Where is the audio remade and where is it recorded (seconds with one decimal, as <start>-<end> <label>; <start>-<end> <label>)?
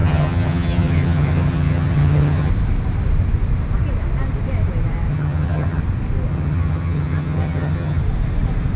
0.0-2.5 remade; 2.5-5.1 recorded; 5.1-5.8 remade; 5.8-6.3 recorded; 6.3-8.0 remade; 8.0-8.8 recorded